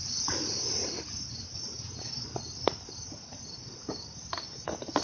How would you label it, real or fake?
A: real